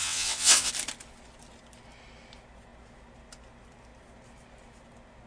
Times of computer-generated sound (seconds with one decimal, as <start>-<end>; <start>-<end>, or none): 0.0-0.7